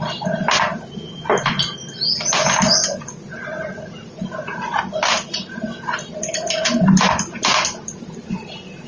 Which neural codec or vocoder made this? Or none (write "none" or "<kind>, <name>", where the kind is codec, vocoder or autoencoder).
none